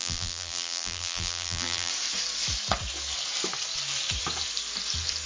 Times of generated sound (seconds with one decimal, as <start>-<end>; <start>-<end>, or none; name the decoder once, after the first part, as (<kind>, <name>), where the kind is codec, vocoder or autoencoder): 0.0-1.9 (vocoder, BigVGAN v2)